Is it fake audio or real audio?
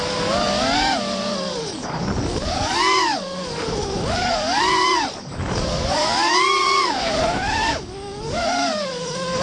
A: fake